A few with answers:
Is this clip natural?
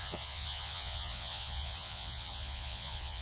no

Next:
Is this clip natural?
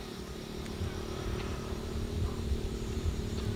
no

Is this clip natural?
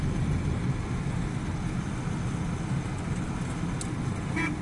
yes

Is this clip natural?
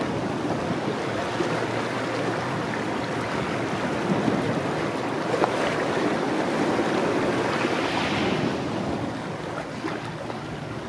yes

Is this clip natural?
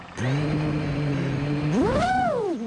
no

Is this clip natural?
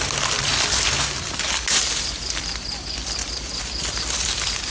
yes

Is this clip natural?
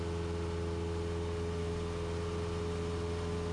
yes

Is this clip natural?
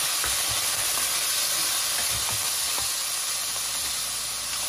yes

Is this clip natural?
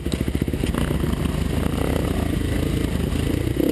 yes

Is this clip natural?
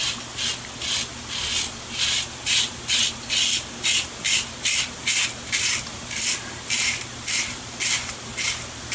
yes